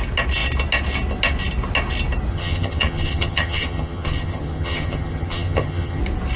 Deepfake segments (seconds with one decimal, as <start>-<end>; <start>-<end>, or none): 2.3-6.0